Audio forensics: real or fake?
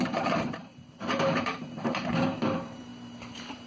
fake